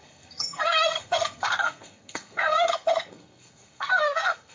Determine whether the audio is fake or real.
fake